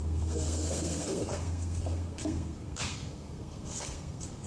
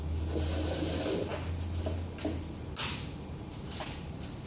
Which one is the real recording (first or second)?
second